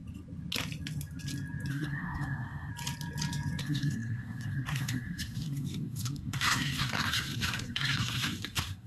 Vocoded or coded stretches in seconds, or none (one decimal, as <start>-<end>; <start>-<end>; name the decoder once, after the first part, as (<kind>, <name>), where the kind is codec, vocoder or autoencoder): 1.7-2.7 (codec, SNAC); 3.6-8.9